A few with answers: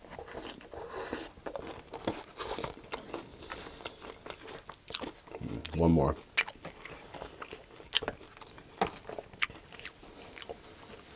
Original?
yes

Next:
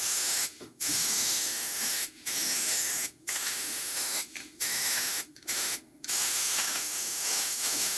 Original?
no